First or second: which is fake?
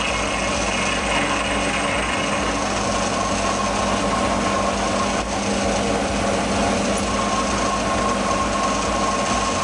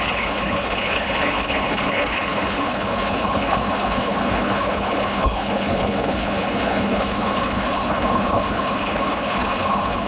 second